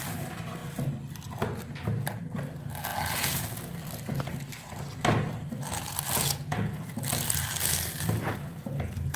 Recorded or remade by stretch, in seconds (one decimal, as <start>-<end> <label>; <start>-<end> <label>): 0.0-9.2 recorded